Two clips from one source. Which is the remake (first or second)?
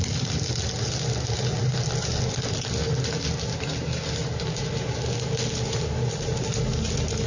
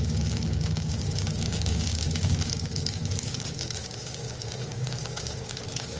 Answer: second